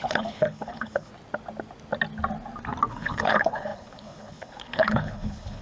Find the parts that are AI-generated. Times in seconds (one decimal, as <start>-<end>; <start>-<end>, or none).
0.0-1.1; 2.9-5.6